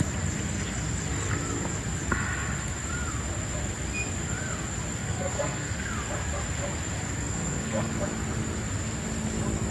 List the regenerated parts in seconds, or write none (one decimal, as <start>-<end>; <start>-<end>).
5.0-5.9; 7.3-7.9